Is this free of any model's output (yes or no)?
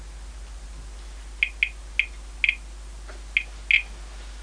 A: yes